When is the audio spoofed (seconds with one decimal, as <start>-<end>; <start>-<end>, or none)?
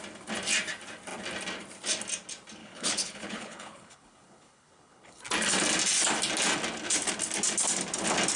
2.6-5.2